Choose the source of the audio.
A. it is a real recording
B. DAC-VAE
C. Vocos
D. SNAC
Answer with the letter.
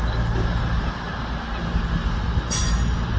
A